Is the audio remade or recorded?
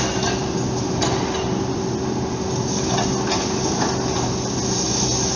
recorded